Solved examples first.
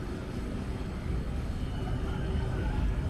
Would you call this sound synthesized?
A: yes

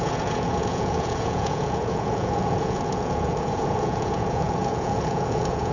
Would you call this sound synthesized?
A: yes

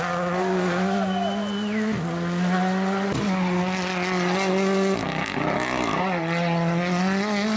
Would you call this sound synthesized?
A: no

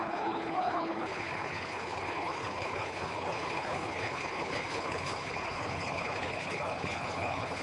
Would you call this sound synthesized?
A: yes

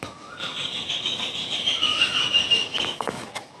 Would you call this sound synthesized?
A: yes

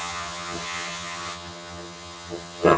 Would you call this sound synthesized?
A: yes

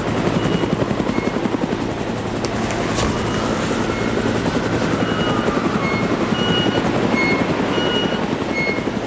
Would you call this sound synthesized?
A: no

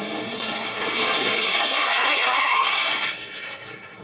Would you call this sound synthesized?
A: yes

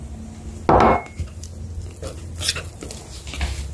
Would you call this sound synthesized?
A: no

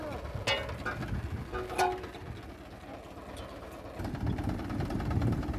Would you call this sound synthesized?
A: no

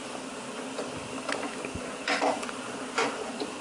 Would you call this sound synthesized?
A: no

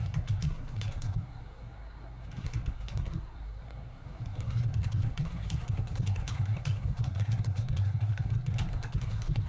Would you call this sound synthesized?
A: yes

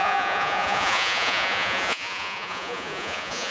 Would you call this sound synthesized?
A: yes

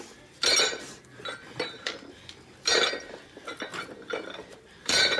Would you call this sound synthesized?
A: yes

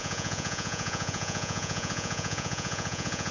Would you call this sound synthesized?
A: yes